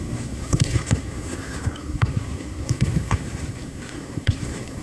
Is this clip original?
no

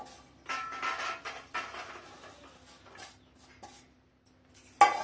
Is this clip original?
yes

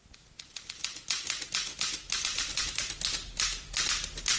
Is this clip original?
yes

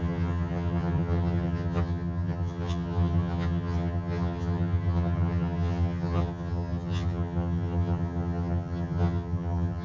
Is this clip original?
no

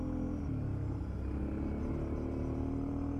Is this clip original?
yes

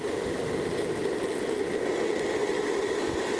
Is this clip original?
yes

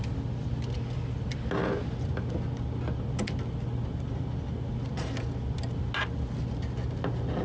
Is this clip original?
yes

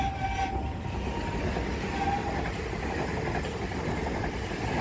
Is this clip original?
yes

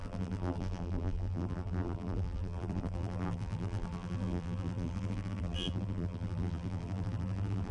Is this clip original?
no